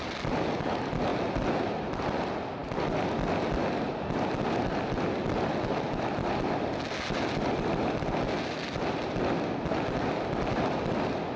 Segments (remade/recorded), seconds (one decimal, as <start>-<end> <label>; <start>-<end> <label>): 0.0-11.4 recorded